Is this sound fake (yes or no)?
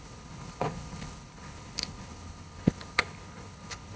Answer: yes